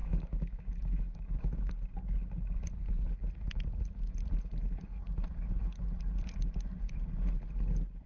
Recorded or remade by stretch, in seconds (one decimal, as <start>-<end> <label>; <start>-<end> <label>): 0.0-1.7 remade; 1.7-8.1 recorded